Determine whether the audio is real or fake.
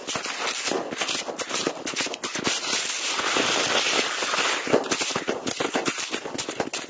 real